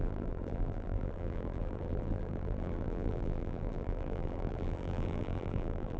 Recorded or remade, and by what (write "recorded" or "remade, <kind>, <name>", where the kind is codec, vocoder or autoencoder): remade, vocoder, BigVGAN v2